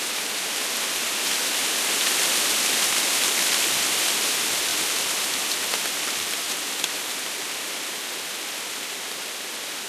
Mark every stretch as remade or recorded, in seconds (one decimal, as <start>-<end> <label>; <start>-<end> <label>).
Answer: 0.0-9.9 recorded